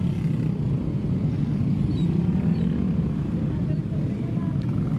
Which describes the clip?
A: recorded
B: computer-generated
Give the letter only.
A